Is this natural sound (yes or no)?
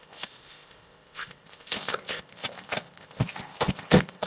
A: no